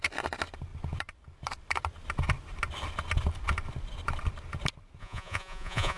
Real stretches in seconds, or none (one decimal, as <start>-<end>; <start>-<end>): 0.0-5.0